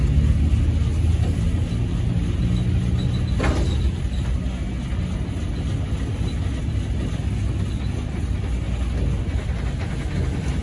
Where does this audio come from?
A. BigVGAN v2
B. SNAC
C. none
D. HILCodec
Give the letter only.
C